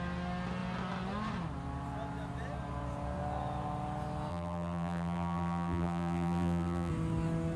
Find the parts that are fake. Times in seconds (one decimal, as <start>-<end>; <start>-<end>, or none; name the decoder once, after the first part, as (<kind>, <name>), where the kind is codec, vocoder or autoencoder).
4.3-6.9 (vocoder, BigVGAN v2)